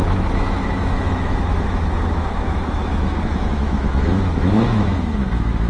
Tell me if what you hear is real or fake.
fake